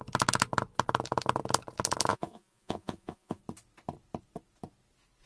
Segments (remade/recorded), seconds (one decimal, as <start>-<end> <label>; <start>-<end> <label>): 0.0-2.1 recorded; 2.1-3.4 remade; 3.4-5.3 recorded